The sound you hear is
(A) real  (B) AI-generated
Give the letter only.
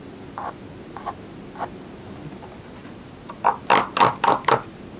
A